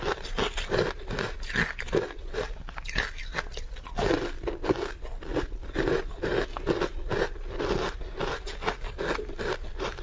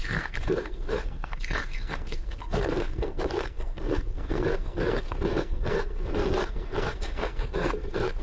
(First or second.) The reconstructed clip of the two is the second